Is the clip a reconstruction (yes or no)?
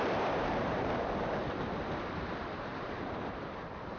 yes